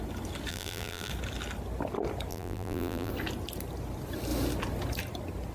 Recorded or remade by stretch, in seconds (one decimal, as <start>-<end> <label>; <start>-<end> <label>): 0.0-0.5 recorded; 0.5-1.1 remade; 1.1-2.3 recorded; 2.3-3.1 remade; 3.1-5.5 recorded